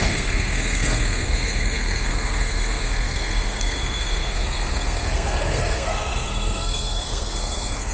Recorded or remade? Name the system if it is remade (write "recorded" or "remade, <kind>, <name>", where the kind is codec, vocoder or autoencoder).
remade, codec, SNAC